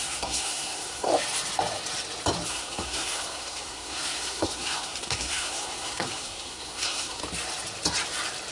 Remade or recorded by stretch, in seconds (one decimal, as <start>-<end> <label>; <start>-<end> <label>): 0.0-1.1 remade; 1.1-2.5 recorded; 2.5-7.2 remade; 7.2-8.5 recorded